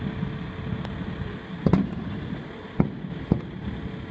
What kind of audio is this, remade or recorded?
recorded